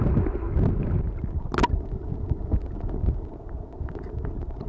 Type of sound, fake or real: real